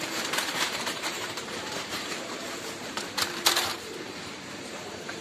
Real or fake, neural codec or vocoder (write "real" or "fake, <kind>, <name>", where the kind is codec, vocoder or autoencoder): fake, vocoder, BigVGAN v2